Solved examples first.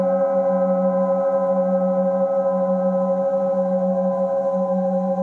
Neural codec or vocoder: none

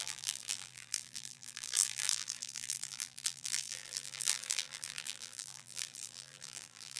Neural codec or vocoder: vocoder, BigVGAN v2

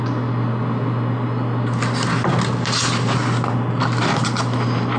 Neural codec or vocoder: none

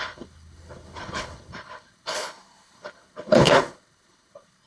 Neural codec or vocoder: codec, HILCodec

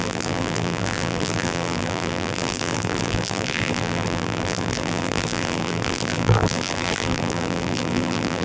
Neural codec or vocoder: vocoder, BigVGAN v2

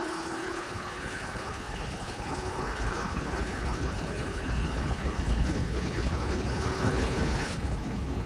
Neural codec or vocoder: codec, HILCodec